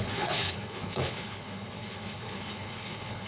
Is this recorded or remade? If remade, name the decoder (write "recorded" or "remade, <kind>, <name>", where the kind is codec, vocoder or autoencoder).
remade, codec, HILCodec